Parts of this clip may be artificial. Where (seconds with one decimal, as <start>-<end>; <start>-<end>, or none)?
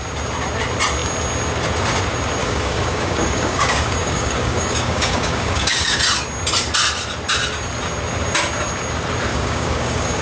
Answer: 2.4-6.0; 9.3-10.2